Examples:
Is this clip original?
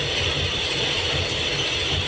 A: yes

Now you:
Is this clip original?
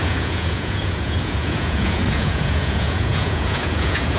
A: no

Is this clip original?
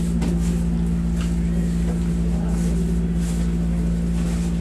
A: yes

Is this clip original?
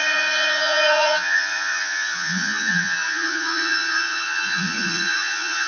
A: no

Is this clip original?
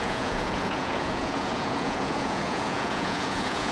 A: no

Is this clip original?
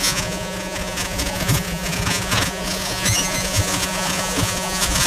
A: no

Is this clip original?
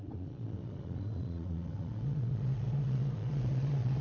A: no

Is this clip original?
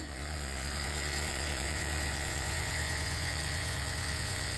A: no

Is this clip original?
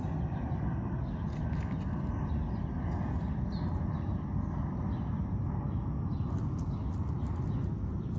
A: yes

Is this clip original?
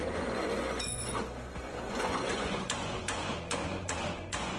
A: no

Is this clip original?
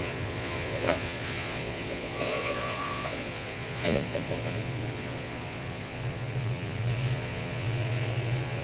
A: no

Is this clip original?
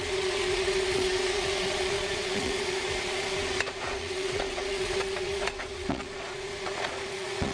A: no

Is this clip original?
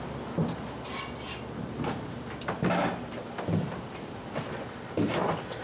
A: yes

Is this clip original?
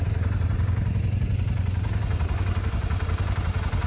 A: yes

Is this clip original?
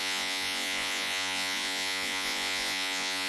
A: no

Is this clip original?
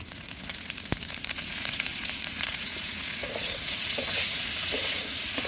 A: no